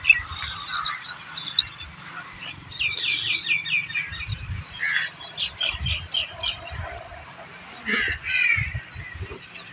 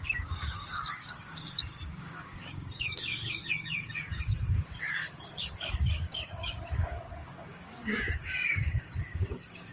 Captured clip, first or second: first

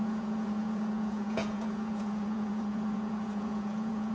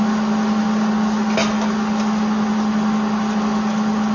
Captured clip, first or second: second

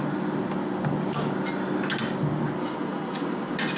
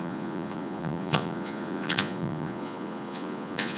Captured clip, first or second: first